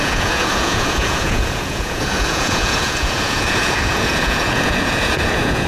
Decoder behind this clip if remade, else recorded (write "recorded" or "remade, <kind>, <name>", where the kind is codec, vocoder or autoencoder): remade, vocoder, Vocos